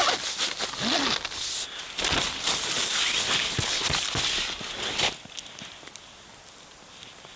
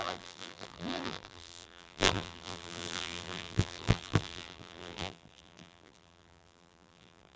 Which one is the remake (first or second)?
second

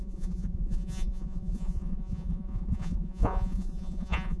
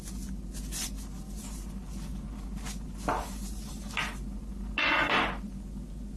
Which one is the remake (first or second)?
first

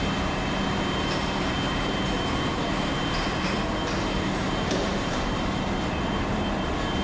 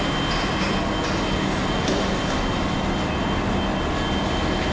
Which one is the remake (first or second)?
first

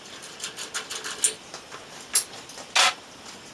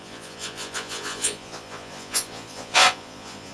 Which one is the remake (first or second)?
second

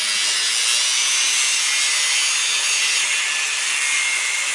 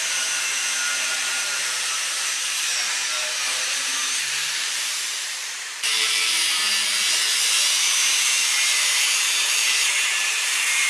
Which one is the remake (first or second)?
second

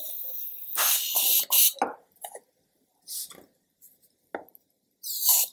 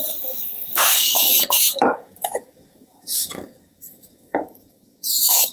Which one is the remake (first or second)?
second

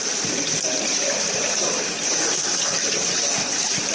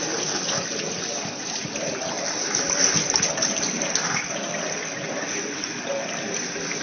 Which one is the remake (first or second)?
first